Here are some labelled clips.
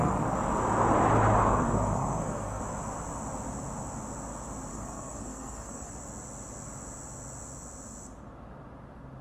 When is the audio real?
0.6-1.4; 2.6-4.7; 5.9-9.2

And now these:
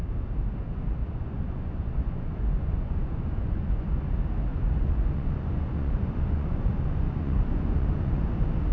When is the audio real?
0.0-1.0; 4.1-4.5; 8.2-8.7

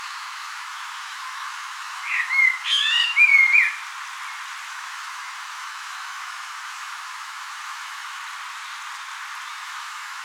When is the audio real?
3.3-4.7; 8.2-9.5

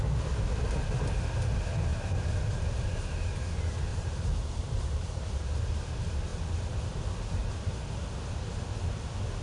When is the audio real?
0.0-1.9; 3.4-3.9; 5.7-9.4

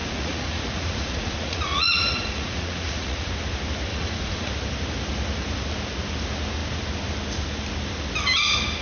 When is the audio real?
3.3-3.9; 4.5-8.8

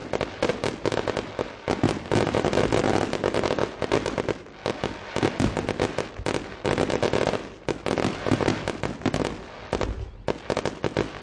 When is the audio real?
0.0-11.2

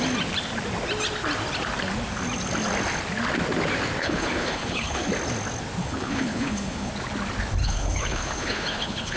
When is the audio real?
0.0-4.0; 5.1-5.8; 6.9-7.6